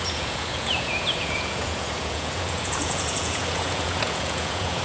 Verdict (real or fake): fake